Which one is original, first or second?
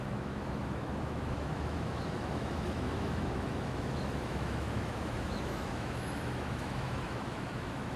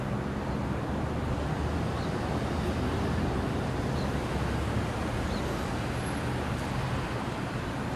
second